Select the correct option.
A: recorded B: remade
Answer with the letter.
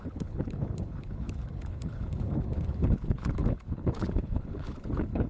B